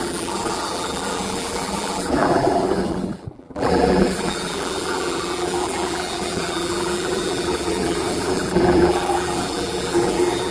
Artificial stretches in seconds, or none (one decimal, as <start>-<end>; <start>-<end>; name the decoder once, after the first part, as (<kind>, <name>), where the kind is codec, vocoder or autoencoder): 0.0-10.5 (vocoder, BigVGAN v2)